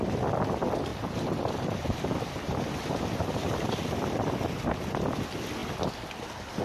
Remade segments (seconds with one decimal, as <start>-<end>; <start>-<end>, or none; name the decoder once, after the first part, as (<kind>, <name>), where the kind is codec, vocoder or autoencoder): 0.9-3.9 (vocoder, BigVGAN v2)